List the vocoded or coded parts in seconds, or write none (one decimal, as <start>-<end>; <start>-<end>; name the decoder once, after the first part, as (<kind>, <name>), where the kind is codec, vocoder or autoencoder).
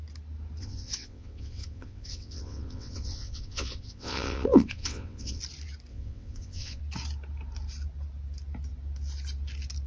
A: 0.6-5.4 (vocoder, WaveNeXt); 5.9-6.8